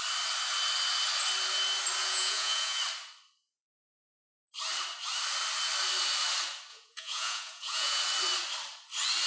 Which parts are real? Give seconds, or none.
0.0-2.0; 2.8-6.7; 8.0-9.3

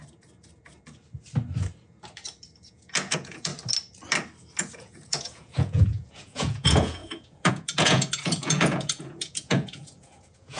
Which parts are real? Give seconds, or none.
0.0-2.7; 3.5-4.6

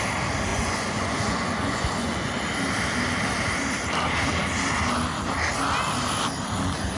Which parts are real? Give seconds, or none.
0.0-0.5; 2.3-7.0

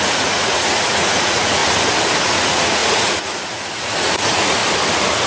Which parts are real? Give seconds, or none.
1.6-2.1; 4.6-5.3

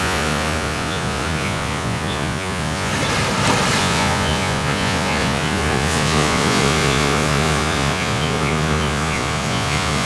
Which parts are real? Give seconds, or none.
2.9-3.8

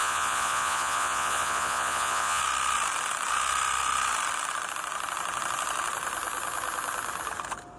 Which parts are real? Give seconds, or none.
2.4-7.8

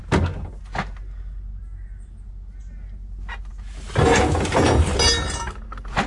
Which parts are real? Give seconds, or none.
0.0-6.1

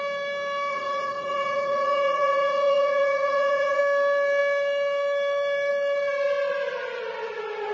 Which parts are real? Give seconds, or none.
0.0-0.7; 3.8-7.7